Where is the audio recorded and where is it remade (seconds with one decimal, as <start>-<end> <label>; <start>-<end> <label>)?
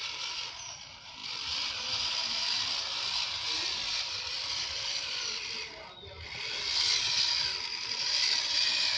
0.0-9.0 recorded